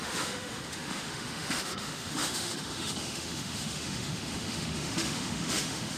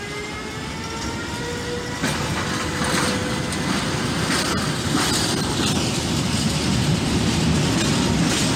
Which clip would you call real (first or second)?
second